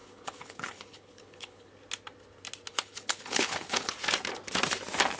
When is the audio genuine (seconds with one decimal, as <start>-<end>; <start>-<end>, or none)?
1.7-2.7; 3.9-5.2